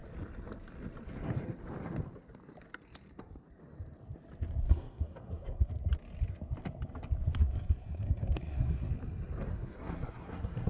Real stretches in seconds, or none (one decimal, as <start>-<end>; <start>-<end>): 0.0-4.6; 5.7-7.4; 8.9-9.5